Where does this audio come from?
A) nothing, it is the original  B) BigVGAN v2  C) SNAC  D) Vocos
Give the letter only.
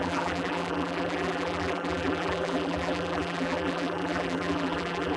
B